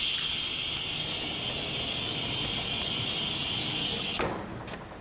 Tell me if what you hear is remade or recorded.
recorded